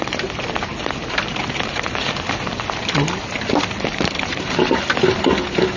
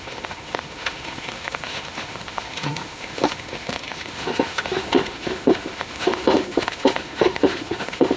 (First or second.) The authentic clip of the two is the first